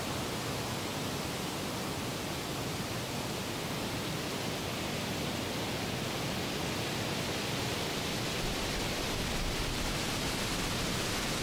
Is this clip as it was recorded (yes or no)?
yes